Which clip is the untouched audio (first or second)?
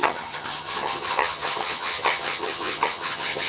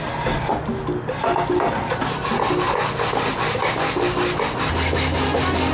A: second